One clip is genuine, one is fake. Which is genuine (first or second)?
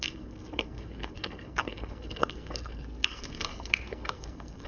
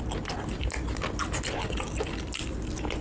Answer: second